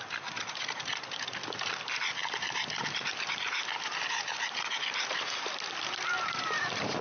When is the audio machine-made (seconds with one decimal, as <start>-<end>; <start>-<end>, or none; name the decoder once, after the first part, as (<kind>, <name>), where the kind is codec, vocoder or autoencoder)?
2.2-4.3 (vocoder, BigVGAN v2)

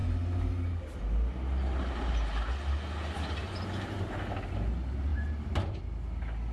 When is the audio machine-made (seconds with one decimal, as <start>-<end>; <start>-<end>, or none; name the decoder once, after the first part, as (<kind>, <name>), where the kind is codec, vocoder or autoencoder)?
5.1-5.8 (vocoder, BigVGAN v2)

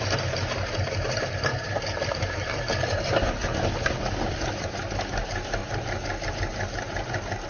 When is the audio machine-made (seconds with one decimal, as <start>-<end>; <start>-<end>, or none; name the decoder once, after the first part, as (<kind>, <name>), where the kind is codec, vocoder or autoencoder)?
0.0-7.5 (vocoder, BigVGAN v2)

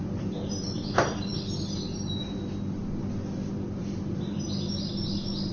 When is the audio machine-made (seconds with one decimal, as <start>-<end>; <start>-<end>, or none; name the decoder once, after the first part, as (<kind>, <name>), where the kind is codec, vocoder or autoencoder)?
0.0-1.3 (vocoder, BigVGAN v2); 3.8-4.9

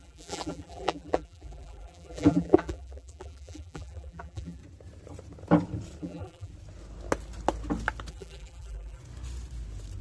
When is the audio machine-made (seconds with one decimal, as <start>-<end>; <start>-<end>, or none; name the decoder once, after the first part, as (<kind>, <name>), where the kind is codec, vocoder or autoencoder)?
0.0-4.6 (vocoder, BigVGAN v2); 6.0-6.5; 8.1-9.0